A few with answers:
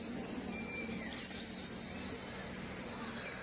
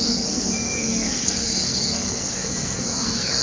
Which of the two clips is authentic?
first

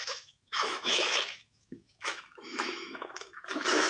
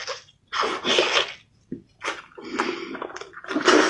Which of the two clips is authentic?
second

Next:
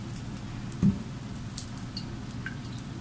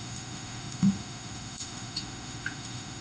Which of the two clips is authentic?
first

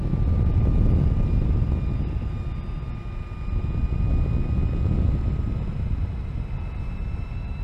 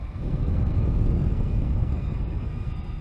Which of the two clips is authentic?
first